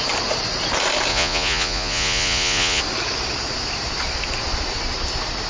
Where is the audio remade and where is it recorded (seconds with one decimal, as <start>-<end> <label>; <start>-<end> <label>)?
0.0-1.1 recorded; 1.1-2.8 remade; 2.8-5.5 recorded